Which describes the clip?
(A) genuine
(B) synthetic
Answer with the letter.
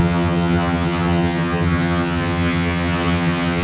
B